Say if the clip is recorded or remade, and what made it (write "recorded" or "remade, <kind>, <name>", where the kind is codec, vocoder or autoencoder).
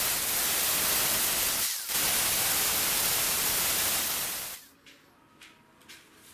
recorded